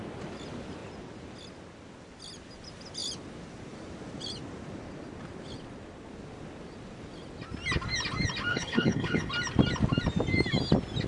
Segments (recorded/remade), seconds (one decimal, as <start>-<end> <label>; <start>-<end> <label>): 0.0-8.5 recorded; 8.5-9.3 remade; 9.3-11.1 recorded